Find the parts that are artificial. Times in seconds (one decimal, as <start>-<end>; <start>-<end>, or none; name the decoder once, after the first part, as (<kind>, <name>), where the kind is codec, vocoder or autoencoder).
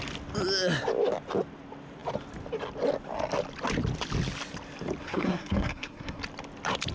5.0-6.2 (codec, SNAC)